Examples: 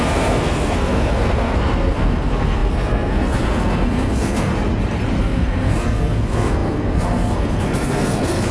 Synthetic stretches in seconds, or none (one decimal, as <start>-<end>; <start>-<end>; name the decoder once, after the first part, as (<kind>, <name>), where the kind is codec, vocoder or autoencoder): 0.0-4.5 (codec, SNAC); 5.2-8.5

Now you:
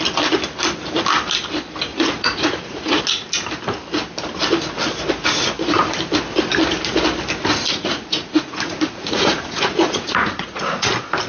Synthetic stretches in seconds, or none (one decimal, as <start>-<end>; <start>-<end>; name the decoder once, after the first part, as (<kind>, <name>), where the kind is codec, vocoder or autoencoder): 1.9-3.0 (vocoder, Vocos); 7.7-10.9

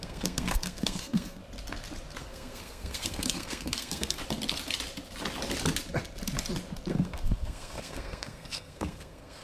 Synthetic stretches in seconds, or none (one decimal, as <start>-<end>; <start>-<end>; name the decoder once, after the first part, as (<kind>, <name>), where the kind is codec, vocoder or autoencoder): 0.0-1.4 (codec, SNAC); 2.2-4.2; 6.9-9.4

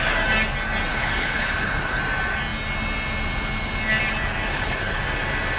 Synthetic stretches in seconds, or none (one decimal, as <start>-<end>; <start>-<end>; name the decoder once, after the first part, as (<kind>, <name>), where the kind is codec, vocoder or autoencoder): 0.9-2.0 (codec, HILCodec); 4.5-5.0

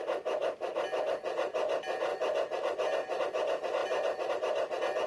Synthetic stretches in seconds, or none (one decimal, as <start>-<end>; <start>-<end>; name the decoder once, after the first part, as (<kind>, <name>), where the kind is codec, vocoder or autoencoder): 2.1-3.2 (vocoder, BigVGAN v2); 3.8-4.3